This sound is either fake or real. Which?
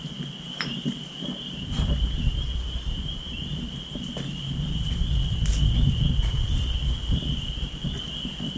real